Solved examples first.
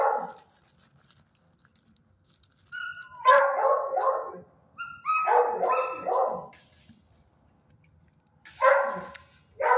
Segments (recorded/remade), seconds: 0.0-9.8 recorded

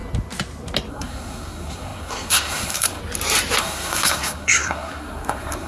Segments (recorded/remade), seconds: 0.0-0.9 recorded; 0.9-3.0 remade; 3.0-3.6 recorded; 3.6-5.7 remade

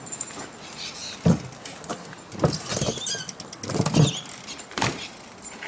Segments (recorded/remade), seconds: 0.0-5.7 recorded

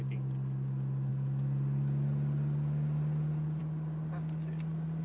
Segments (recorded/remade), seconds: 0.0-5.0 recorded

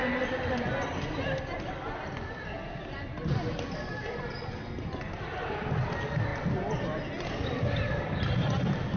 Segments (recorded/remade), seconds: 0.0-9.0 recorded

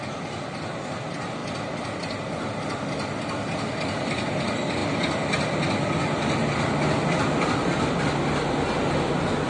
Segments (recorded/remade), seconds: 0.0-9.5 recorded

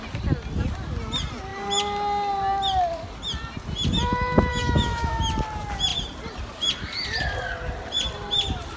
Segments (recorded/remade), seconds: 0.0-4.5 recorded; 4.5-5.2 remade; 5.2-8.8 recorded